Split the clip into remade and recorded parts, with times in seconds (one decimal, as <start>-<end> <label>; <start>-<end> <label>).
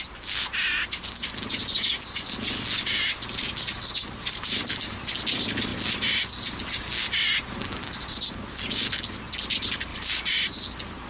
0.0-4.0 recorded; 4.0-5.1 remade; 5.1-9.9 recorded; 9.9-10.5 remade; 10.5-11.1 recorded